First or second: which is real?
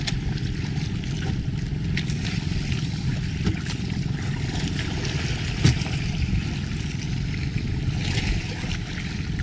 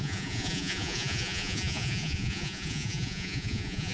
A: first